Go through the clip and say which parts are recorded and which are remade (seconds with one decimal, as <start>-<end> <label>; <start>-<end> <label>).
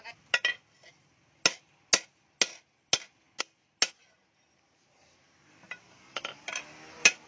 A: 0.0-4.8 recorded; 4.8-6.6 remade; 6.6-7.3 recorded